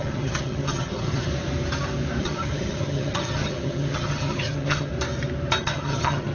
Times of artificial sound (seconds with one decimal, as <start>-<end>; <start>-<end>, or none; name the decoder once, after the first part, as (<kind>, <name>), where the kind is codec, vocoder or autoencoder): 0.0-1.3 (vocoder, HiFi-GAN); 2.2-4.9; 5.6-6.3